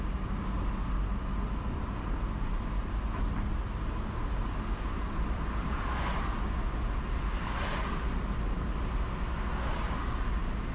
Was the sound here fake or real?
real